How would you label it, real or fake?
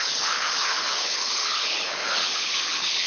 fake